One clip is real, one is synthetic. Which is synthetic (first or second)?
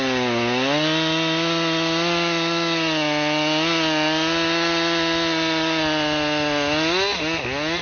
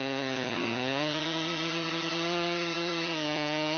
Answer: second